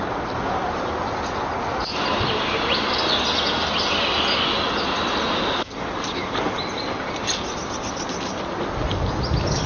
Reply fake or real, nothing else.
real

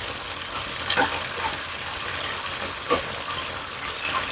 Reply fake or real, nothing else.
real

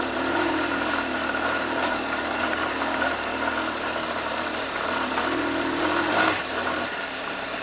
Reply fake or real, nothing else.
fake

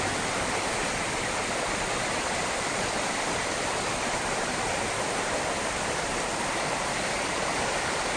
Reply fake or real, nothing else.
real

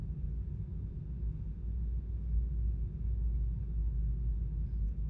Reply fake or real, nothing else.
real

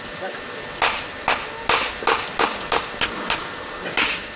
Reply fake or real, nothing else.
real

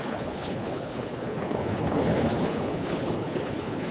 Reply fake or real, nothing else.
fake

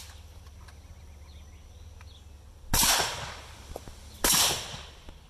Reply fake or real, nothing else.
real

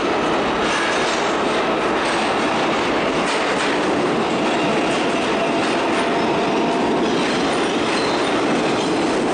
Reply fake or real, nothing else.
real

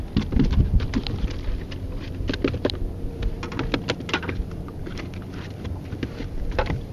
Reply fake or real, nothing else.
fake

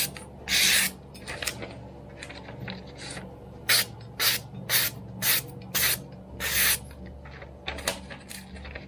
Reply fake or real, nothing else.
real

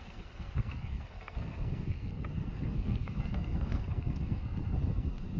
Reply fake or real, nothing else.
fake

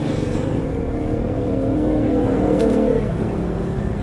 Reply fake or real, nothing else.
fake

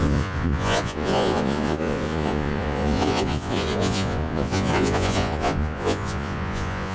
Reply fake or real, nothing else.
fake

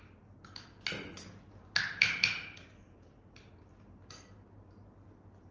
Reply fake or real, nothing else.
real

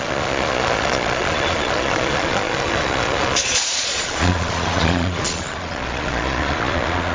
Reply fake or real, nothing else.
fake